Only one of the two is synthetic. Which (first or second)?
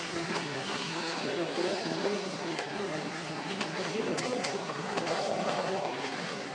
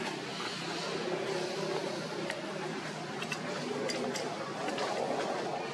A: first